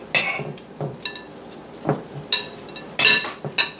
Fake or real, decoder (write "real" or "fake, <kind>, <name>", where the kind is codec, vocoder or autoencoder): real